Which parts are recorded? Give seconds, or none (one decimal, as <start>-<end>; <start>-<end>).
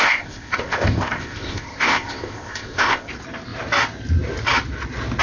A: 3.1-5.2